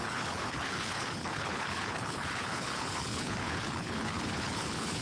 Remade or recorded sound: remade